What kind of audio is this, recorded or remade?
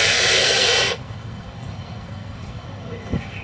remade